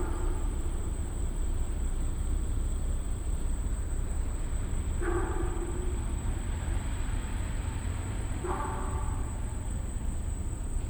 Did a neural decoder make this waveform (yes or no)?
yes